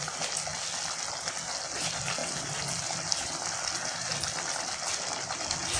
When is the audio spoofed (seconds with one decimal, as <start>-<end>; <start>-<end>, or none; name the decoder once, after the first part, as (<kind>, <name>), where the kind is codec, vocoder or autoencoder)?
none